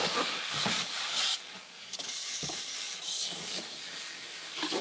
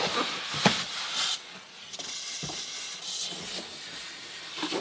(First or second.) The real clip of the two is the second